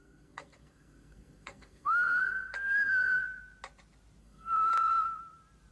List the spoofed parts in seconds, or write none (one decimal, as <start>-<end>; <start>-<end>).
0.0-3.2; 4.2-4.7